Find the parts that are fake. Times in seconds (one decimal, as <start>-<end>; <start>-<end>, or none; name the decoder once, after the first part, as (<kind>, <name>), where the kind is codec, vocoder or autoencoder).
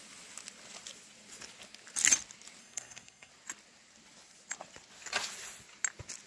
2.6-3.3 (codec, SNAC)